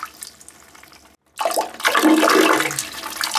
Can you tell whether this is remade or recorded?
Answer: recorded